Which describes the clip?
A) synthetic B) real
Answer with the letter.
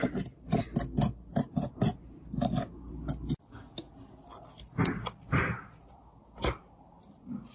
B